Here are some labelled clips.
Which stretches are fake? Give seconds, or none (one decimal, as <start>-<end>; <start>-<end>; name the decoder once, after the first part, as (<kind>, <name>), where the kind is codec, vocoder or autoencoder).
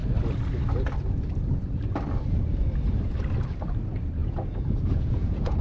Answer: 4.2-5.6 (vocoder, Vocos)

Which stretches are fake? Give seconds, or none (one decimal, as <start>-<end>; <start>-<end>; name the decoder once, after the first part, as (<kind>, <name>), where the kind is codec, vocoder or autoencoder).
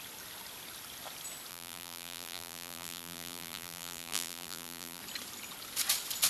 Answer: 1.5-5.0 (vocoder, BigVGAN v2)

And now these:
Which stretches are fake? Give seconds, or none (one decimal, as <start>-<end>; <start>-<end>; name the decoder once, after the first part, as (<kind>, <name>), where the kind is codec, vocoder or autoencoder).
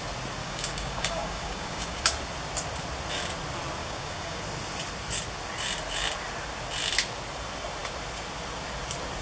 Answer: 0.4-2.0 (codec, DAC); 3.8-4.4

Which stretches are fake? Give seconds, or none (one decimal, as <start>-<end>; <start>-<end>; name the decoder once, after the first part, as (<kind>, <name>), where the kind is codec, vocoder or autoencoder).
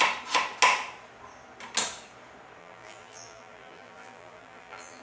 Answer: 2.6-5.0 (vocoder, BigVGAN v2)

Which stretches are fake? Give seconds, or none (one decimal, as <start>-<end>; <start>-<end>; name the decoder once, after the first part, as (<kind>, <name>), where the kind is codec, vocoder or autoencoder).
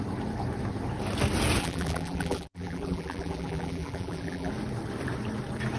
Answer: 1.6-4.5 (vocoder, BigVGAN v2)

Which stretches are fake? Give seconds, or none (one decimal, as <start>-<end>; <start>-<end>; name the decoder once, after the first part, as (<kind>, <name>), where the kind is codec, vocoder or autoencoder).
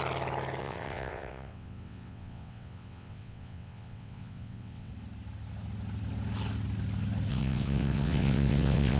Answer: 0.6-4.9 (vocoder, WaveNeXt); 7.3-9.0